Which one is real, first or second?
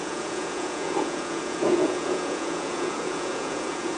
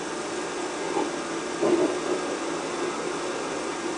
second